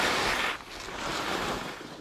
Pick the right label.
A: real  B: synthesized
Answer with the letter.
A